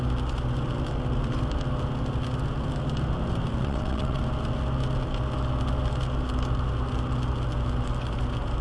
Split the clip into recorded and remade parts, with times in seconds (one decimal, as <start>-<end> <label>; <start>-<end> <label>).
0.0-3.6 recorded; 3.6-4.2 remade; 4.2-8.6 recorded